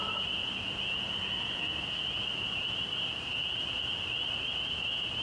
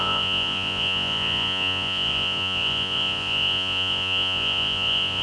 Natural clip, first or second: first